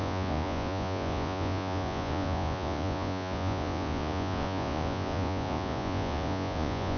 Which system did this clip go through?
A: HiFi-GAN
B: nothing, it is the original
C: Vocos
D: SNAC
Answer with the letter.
C